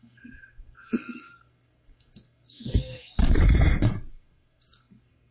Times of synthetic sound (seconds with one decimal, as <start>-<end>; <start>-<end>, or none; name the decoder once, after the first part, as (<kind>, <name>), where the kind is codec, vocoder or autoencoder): 0.0-3.2 (codec, SNAC); 4.1-5.3